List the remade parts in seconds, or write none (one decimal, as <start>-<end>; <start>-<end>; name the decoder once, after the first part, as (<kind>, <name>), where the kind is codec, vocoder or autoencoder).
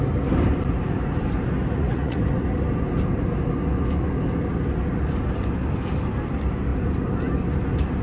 1.7-2.2 (vocoder, Vocos)